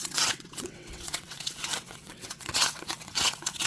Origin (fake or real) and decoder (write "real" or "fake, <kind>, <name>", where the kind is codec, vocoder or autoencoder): fake, vocoder, WaveNeXt